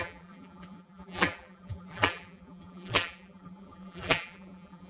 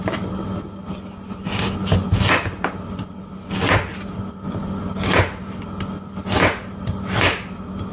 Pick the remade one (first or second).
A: first